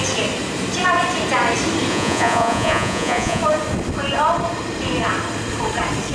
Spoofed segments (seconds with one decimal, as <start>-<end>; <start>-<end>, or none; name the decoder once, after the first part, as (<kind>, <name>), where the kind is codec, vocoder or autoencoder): 1.9-3.4 (vocoder, Vocos)